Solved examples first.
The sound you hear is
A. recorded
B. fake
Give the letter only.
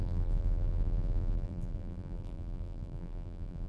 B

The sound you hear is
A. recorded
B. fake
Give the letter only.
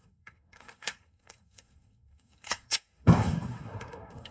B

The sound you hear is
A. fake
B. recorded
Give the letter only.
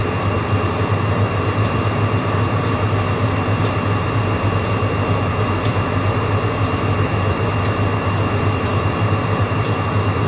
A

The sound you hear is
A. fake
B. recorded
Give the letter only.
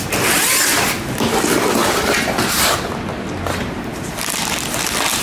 B